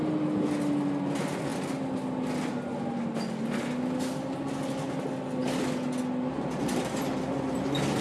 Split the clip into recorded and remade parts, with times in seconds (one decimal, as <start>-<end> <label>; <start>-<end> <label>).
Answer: 0.0-8.0 recorded